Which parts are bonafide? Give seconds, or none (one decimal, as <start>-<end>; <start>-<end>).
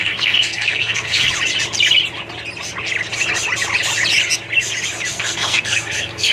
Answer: 1.3-5.1